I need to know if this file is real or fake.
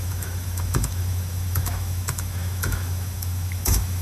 fake